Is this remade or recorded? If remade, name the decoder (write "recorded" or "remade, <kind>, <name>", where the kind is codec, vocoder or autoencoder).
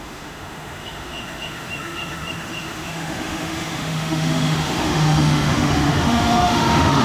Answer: remade, autoencoder, DAC-VAE